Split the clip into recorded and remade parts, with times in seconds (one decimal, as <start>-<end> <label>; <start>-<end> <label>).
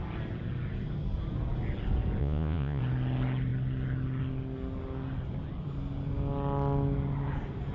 0.0-2.2 recorded; 2.2-2.8 remade; 2.8-7.7 recorded